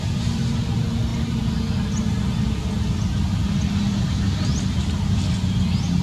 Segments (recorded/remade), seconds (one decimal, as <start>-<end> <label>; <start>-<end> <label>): 0.0-6.0 recorded